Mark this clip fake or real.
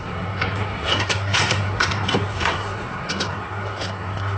fake